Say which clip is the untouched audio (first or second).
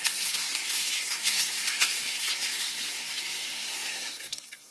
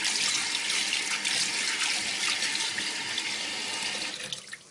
second